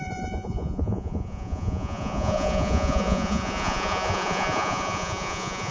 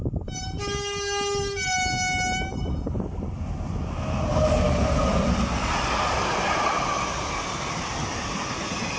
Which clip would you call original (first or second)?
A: second